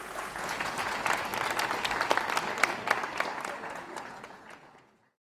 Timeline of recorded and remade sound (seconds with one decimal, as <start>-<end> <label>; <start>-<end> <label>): 0.0-1.3 remade; 1.3-3.7 recorded; 3.7-5.3 remade